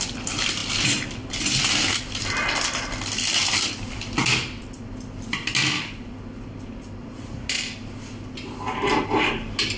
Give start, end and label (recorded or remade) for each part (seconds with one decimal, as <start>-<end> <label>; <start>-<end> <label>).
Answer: 0.0-7.0 recorded; 7.0-7.6 remade; 7.6-9.8 recorded